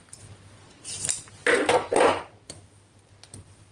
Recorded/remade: recorded